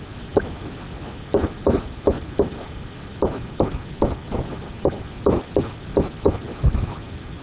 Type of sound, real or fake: real